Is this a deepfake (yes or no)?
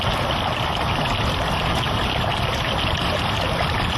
no